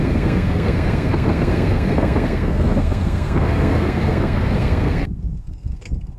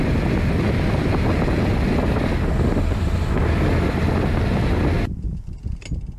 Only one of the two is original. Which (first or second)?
second